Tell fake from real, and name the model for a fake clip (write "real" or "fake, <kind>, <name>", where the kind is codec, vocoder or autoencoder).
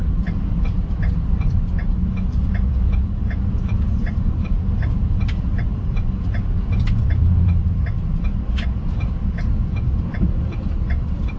fake, vocoder, BigVGAN v2